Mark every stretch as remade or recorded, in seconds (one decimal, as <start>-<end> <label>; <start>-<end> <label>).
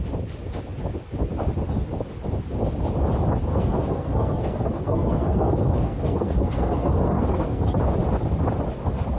0.0-3.5 recorded; 3.5-7.8 remade; 7.8-9.2 recorded